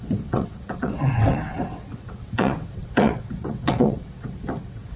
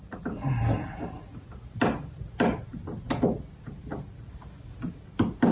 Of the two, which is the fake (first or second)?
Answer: first